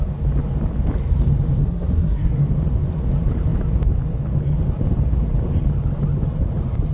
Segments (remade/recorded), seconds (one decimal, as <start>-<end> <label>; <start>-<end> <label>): 0.0-1.6 recorded; 1.6-2.4 remade; 2.4-6.9 recorded